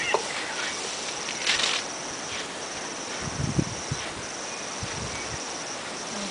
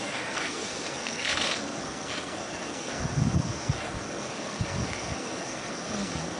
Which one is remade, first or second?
second